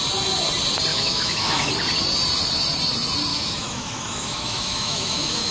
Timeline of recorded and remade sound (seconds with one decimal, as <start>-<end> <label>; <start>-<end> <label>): 0.0-0.9 recorded; 0.9-1.7 remade; 1.7-3.3 recorded; 3.3-5.5 remade